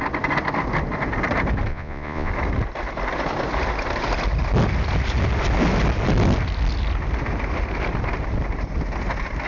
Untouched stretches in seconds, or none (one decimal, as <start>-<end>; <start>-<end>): 0.0-1.7; 2.3-9.5